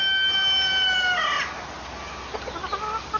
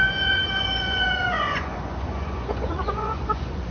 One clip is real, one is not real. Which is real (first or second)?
first